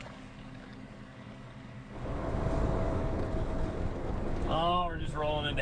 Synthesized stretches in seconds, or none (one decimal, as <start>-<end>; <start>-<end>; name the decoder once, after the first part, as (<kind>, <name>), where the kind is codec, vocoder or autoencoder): 0.0-5.6 (codec, DAC)